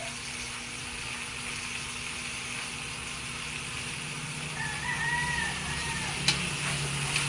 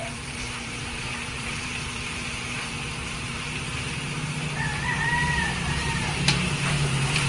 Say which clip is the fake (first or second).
second